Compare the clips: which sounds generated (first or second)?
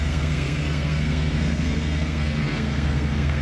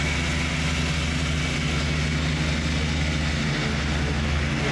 first